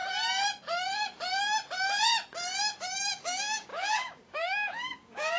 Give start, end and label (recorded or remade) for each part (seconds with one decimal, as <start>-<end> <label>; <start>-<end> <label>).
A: 0.0-3.1 recorded; 3.1-5.4 remade